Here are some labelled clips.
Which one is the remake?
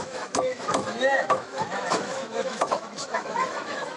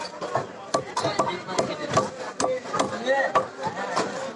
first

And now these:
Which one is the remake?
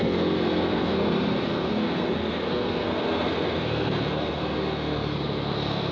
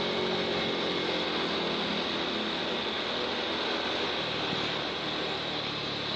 first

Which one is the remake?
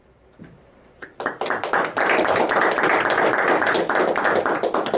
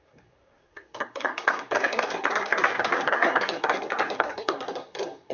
second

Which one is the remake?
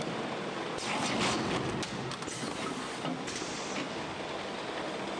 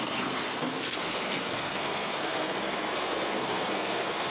second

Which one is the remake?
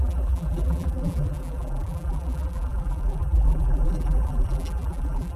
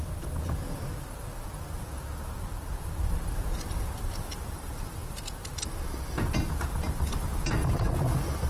first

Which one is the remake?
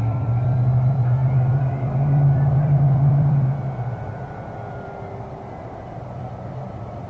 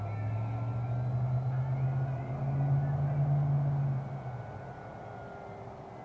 first